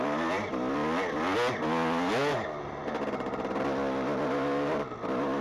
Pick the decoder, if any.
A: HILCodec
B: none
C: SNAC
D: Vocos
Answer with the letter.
B